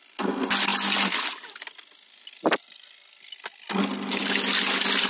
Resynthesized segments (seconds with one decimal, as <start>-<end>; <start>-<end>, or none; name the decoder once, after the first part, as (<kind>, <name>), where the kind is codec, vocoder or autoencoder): none